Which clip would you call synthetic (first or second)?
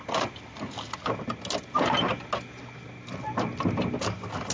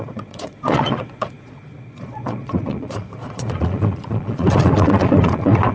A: second